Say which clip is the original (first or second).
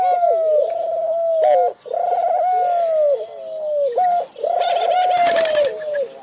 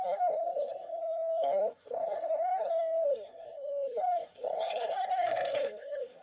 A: first